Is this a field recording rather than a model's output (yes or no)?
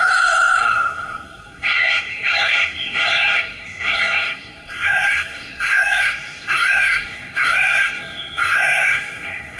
no